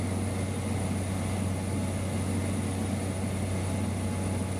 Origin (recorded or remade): recorded